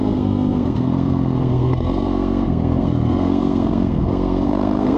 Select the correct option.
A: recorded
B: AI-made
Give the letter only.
B